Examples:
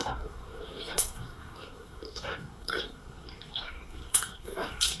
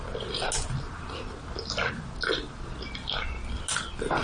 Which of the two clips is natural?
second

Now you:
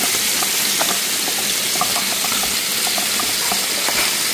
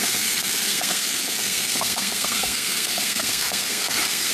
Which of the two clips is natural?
first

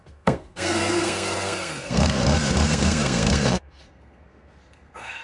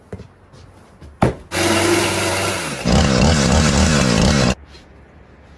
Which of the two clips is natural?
second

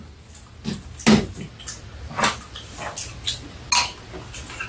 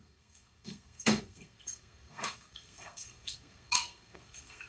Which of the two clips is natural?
first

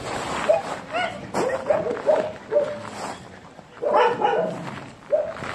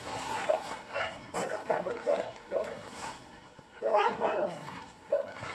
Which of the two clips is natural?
first